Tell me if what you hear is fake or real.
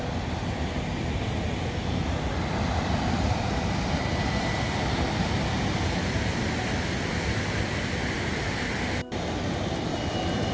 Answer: real